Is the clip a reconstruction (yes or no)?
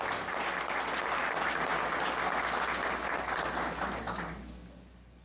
no